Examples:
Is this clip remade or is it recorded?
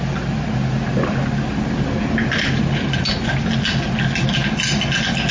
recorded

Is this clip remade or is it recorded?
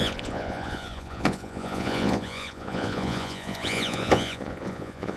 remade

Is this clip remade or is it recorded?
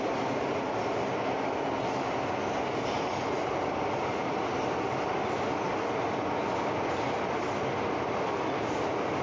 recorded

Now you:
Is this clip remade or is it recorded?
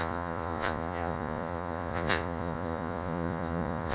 remade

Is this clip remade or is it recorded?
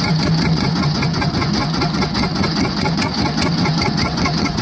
remade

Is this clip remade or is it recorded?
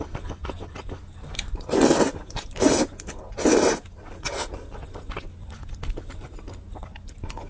recorded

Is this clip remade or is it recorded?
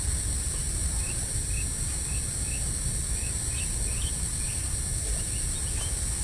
recorded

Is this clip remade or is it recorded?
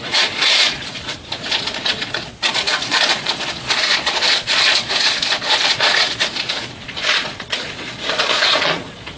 remade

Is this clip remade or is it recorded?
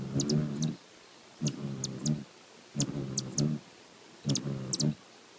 recorded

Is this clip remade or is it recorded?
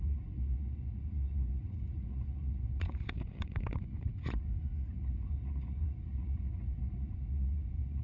remade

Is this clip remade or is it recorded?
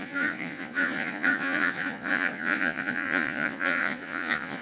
remade